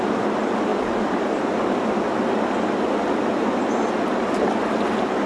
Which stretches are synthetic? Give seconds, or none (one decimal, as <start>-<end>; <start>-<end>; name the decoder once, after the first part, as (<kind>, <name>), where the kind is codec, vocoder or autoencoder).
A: 0.7-2.3 (vocoder, BigVGAN v2)